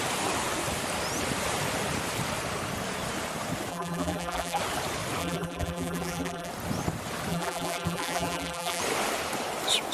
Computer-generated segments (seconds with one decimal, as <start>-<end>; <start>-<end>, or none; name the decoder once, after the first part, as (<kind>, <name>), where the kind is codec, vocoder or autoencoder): 3.7-4.6 (vocoder, BigVGAN v2); 5.2-6.5; 7.3-8.8